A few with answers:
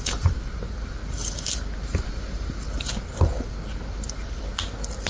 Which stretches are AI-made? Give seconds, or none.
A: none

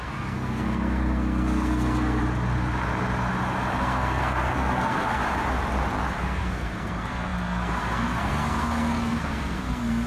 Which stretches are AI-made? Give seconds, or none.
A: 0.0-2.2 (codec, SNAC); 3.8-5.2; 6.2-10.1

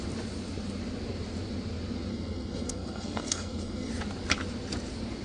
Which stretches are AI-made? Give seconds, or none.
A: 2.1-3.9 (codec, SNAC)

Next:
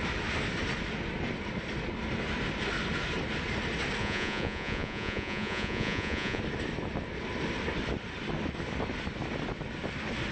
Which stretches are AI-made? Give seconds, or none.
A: 4.0-6.4 (vocoder, Vocos)